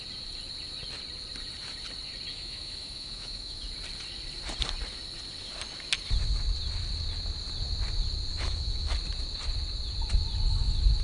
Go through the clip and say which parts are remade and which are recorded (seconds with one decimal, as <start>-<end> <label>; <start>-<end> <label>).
0.0-2.3 recorded; 2.3-3.7 remade; 3.7-8.3 recorded; 8.3-8.9 remade; 8.9-11.0 recorded